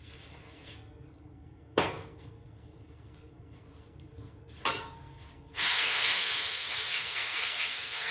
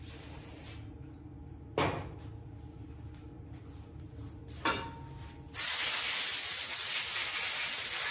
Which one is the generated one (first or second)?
first